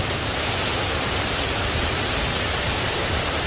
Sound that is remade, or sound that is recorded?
remade